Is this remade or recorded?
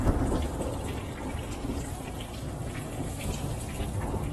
recorded